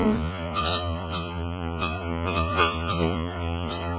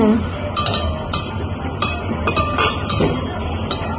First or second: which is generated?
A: first